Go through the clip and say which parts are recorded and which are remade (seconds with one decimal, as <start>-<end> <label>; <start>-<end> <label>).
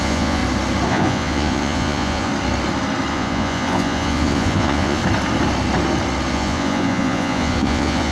0.0-0.4 remade; 0.4-0.9 recorded; 0.9-2.3 remade; 2.3-3.1 recorded; 3.1-5.0 remade; 5.0-6.3 recorded; 6.3-8.1 remade